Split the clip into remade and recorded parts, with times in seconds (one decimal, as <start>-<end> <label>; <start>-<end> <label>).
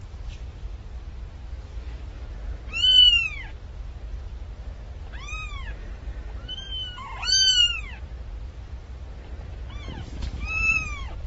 0.0-5.8 recorded; 5.8-6.3 remade; 6.3-11.3 recorded